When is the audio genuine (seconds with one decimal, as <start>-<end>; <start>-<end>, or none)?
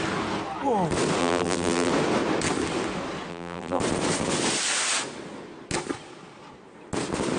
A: 0.0-1.2; 1.9-3.3; 3.8-7.4